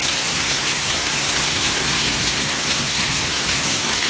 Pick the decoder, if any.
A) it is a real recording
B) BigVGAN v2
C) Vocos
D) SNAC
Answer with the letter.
D